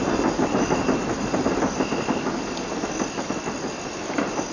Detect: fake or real real